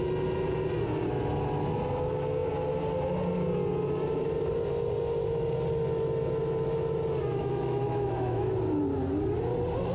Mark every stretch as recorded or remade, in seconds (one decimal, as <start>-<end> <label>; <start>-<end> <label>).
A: 0.0-7.4 recorded; 7.4-8.5 remade; 8.5-9.9 recorded